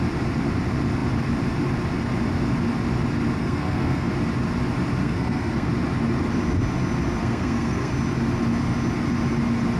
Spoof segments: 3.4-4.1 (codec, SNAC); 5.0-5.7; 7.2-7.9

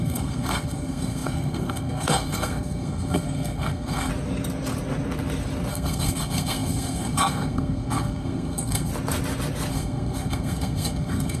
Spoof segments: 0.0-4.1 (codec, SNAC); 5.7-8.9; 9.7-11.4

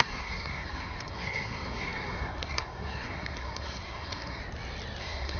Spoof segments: 0.0-4.4 (codec, SNAC); 5.0-5.4

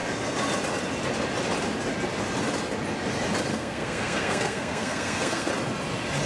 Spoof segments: 3.5-5.5 (codec, SNAC)